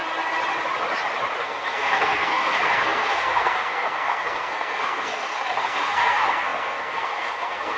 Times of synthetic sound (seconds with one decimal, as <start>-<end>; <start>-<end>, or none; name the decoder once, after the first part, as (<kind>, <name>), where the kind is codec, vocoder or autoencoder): 1.4-7.8 (codec, SNAC)